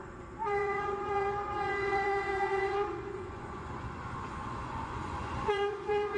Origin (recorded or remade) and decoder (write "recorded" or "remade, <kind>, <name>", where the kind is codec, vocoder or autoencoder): remade, vocoder, Vocos